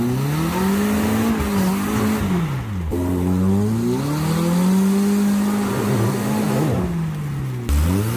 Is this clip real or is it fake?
real